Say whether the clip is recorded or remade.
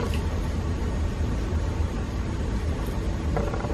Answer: recorded